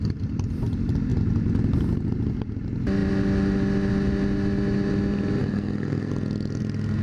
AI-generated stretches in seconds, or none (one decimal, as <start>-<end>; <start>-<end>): 5.4-6.1